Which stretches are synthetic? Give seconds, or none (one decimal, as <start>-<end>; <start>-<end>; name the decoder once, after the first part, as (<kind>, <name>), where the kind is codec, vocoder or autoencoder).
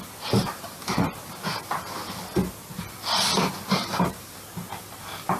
0.5-1.3 (vocoder, BigVGAN v2); 3.8-4.4